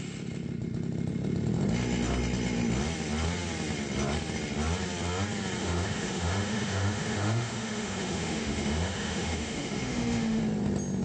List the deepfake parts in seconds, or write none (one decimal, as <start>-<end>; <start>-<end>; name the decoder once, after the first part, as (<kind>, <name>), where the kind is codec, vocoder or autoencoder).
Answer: 5.6-10.4 (autoencoder, DAC-VAE)